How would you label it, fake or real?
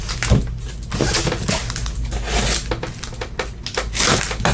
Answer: real